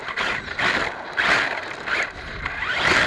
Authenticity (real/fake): real